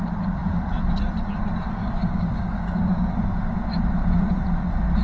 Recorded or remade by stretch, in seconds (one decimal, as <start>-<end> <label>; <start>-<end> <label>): 0.0-1.8 recorded; 1.8-3.1 remade; 3.1-5.0 recorded